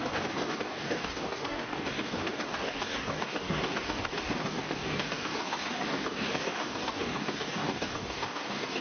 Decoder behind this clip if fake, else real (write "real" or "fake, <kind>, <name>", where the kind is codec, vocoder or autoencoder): fake, codec, DAC